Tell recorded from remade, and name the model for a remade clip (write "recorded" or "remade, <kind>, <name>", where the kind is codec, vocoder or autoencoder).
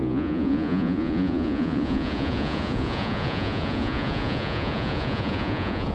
remade, vocoder, Vocos